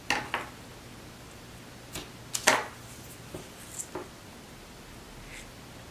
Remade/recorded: recorded